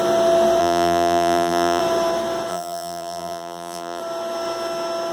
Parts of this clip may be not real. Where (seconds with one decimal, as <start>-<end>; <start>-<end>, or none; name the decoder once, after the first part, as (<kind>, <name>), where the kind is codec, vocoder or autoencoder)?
0.6-1.8 (vocoder, BigVGAN v2); 2.5-4.0